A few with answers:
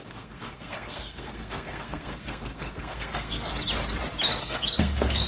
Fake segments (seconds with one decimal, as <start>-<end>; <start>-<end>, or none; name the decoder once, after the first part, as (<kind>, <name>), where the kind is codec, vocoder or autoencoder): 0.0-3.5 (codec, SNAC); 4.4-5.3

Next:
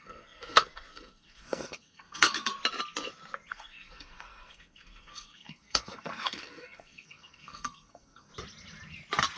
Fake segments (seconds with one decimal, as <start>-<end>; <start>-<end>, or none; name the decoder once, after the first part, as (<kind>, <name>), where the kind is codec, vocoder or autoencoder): 0.0-2.5 (codec, SNAC); 3.5-8.3

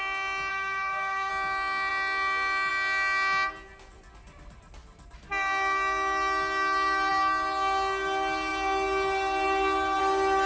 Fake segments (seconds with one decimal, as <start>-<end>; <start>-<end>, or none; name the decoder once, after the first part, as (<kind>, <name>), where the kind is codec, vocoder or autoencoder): 0.5-1.3 (codec, SNAC)

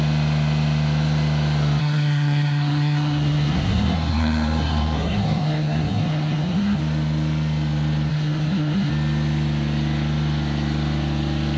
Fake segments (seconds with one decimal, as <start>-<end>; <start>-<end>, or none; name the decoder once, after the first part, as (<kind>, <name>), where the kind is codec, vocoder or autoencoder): 1.8-6.8 (codec, SNAC); 8.1-8.9